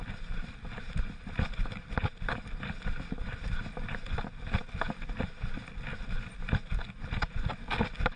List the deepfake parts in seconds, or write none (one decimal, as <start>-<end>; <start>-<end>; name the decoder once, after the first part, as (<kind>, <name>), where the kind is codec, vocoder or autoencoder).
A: none